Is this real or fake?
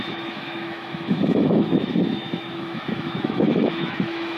fake